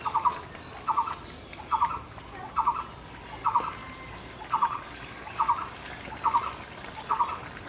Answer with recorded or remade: recorded